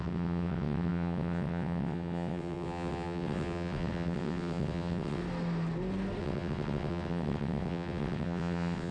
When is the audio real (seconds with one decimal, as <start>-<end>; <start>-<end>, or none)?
5.2-6.2